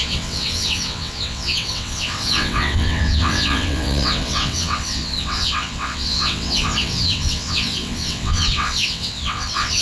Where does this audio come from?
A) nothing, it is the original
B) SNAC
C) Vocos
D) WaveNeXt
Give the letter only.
D